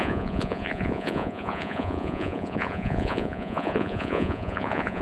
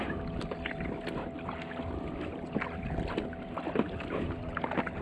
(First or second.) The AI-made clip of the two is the first